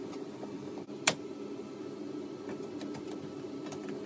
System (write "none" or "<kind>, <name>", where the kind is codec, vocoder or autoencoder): none